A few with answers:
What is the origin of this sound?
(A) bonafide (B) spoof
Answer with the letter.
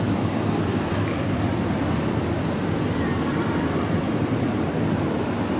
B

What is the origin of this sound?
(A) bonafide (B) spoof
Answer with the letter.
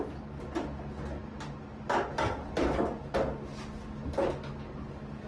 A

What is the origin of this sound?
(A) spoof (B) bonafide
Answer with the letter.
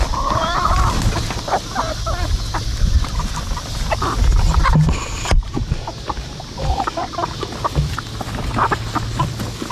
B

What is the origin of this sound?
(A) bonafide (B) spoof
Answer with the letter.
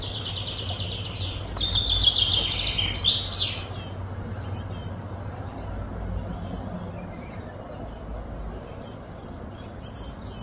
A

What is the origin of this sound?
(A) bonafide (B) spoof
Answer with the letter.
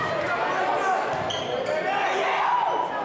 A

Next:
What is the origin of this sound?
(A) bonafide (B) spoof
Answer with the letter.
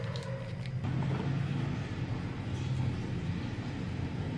A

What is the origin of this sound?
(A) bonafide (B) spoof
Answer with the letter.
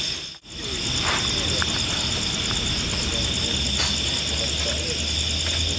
A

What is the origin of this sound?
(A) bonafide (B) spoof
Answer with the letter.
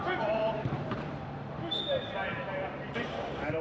B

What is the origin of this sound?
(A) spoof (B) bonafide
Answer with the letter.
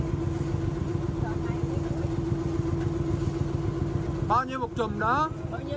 B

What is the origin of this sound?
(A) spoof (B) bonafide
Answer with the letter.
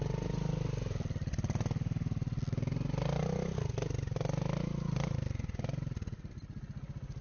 B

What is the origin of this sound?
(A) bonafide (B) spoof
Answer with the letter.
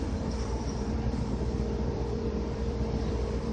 B